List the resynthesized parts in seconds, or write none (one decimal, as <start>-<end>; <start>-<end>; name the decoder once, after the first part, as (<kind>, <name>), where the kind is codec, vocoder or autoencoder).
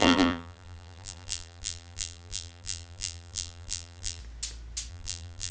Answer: 0.0-4.2 (vocoder, BigVGAN v2); 4.9-5.5